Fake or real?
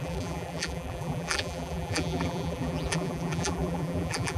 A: fake